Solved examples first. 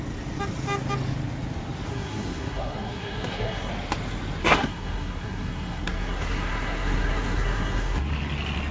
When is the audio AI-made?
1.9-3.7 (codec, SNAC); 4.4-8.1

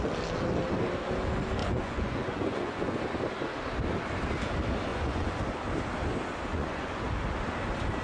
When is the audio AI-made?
1.6-3.0 (vocoder, Vocos); 4.9-5.4; 6.5-7.0

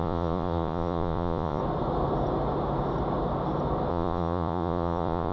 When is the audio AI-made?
0.0-1.6 (vocoder, Vocos); 3.9-5.3

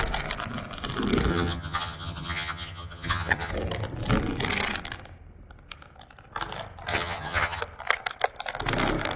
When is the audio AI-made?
1.3-3.5 (vocoder, HiFi-GAN); 6.9-7.6

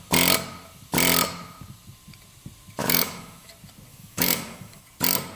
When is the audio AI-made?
2.8-3.5 (autoencoder, DAC-VAE); 3.9-4.8

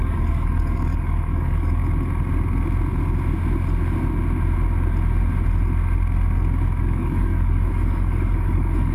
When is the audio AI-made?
0.0-1.8 (codec, DAC); 6.8-8.9

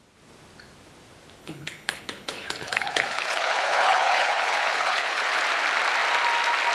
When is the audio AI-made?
1.4-5.4 (codec, HILCodec)

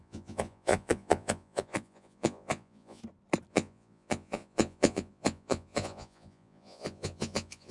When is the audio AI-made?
0.0-3.0 (vocoder, Vocos); 3.5-7.7